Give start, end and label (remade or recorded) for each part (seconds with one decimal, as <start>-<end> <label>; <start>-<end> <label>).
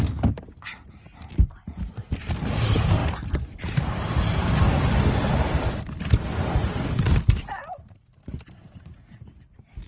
0.0-9.9 recorded